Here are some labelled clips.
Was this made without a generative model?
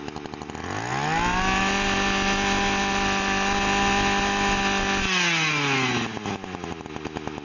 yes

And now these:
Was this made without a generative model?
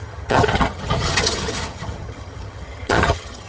no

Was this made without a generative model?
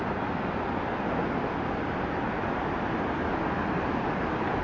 yes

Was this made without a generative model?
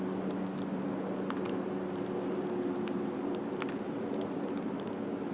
yes